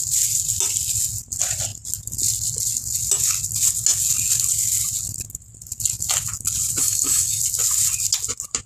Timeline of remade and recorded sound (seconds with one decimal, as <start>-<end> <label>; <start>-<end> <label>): 0.0-6.8 recorded; 6.8-7.4 remade; 7.4-8.7 recorded